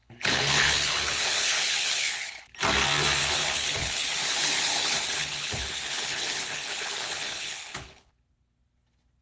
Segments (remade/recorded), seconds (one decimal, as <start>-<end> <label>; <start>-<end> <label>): 0.0-2.4 remade; 2.4-3.2 recorded; 3.2-8.1 remade; 8.1-9.2 recorded

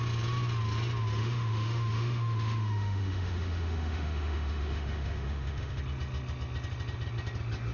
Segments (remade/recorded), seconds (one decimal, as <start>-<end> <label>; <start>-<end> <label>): 0.0-1.2 recorded; 1.2-5.8 remade; 5.8-7.7 recorded

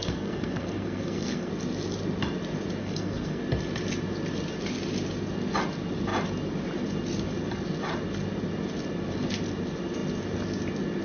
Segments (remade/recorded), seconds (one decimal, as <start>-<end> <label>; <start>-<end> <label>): 0.0-1.5 remade; 1.5-2.8 recorded; 2.8-3.4 remade; 3.4-11.0 recorded

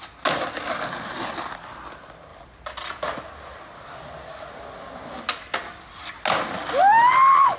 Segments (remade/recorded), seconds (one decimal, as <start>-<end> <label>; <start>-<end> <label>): 0.0-7.6 recorded

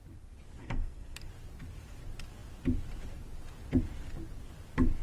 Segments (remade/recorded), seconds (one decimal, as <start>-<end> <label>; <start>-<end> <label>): 0.0-0.6 recorded; 0.6-1.3 remade; 1.3-5.0 recorded

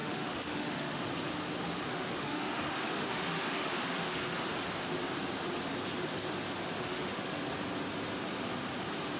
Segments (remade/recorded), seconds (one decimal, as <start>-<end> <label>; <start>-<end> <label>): 0.0-1.1 remade; 1.1-1.9 recorded; 1.9-4.5 remade; 4.5-6.8 recorded; 6.8-7.4 remade; 7.4-9.2 recorded

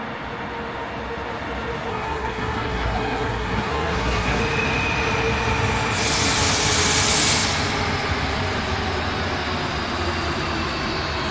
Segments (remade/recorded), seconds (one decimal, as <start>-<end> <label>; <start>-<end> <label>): 0.0-1.9 recorded; 1.9-4.4 remade; 4.4-11.3 recorded

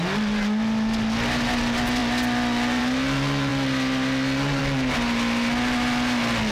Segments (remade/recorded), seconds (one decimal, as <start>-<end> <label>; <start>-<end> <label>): 0.0-6.5 recorded